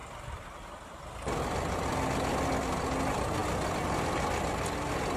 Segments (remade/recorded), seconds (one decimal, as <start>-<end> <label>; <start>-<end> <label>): 0.0-5.2 recorded